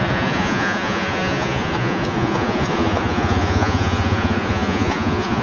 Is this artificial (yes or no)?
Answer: yes